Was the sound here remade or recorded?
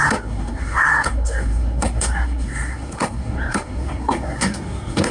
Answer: remade